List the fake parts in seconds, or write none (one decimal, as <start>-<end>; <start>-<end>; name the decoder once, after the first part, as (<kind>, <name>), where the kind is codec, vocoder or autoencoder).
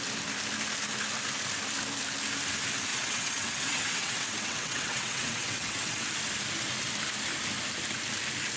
2.9-6.1 (vocoder, WaveNeXt)